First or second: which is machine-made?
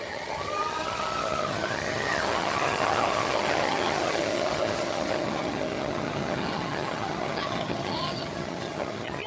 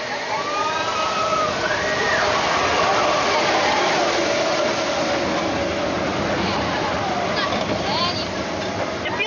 first